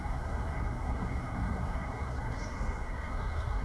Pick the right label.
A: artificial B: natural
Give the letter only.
A